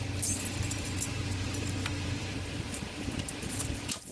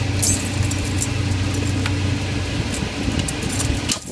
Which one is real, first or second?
second